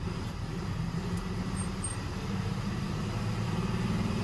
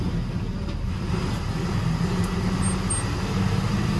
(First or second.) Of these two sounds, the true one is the second